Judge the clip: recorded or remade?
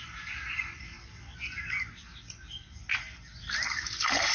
recorded